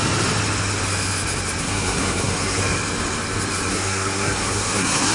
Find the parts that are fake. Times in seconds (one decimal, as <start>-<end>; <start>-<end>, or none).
1.6-2.6; 3.7-5.1